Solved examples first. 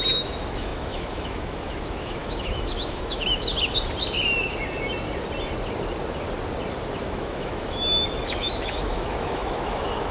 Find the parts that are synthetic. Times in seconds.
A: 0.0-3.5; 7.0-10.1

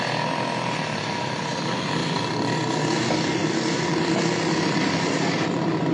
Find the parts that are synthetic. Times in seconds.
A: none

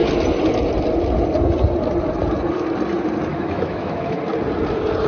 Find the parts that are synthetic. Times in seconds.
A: 3.3-4.2